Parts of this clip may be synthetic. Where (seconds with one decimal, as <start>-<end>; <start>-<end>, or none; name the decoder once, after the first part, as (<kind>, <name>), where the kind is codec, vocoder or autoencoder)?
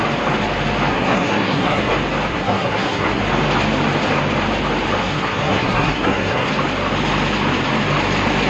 0.9-1.9 (codec, SNAC); 2.3-3.2; 5.0-6.5